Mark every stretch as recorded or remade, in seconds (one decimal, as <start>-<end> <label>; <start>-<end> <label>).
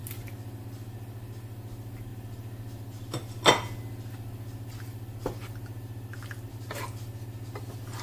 0.0-8.0 recorded